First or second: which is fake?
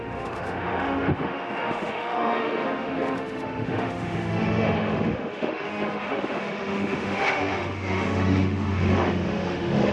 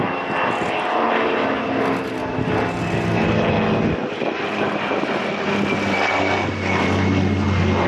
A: first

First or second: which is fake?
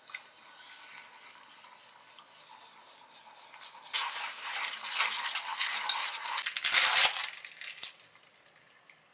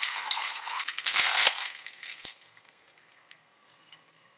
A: second